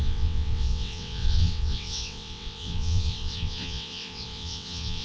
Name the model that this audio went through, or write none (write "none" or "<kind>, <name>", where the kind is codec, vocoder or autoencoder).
vocoder, WaveNeXt